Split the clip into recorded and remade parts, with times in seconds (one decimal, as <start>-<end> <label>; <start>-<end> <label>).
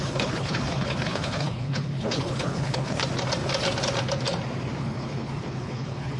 0.0-3.0 remade; 3.0-4.8 recorded; 4.8-6.2 remade